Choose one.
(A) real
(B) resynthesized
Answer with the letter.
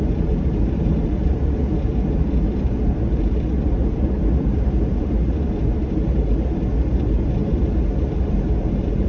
B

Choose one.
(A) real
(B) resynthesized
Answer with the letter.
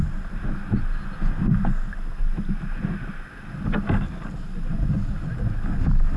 A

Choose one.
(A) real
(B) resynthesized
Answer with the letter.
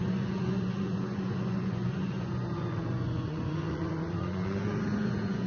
B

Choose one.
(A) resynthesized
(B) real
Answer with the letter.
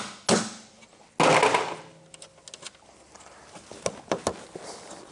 B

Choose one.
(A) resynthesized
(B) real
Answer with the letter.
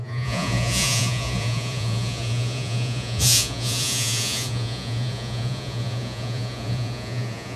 A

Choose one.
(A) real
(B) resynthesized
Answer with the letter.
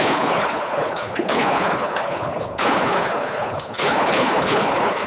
B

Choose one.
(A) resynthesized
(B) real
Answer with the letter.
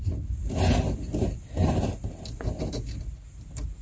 B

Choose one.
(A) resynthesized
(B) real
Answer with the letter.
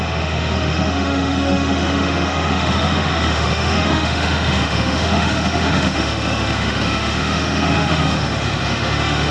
A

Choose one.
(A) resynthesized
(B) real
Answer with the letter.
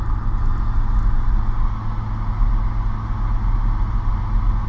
B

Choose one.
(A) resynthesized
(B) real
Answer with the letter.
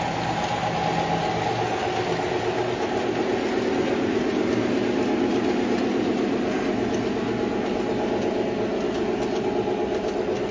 B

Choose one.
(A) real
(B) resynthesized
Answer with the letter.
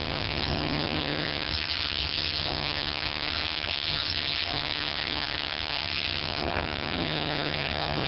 B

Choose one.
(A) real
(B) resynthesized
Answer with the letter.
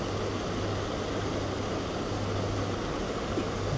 A